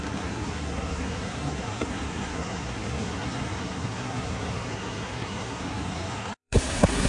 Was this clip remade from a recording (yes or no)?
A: yes